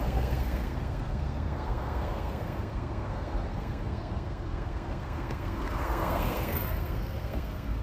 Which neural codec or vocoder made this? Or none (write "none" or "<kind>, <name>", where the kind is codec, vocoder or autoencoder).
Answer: codec, SNAC